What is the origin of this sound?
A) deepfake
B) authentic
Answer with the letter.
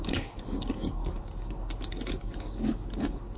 A